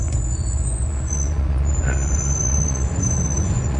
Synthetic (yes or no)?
yes